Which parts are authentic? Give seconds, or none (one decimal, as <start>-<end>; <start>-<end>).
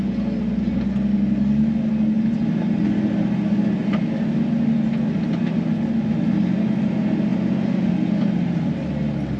0.0-9.4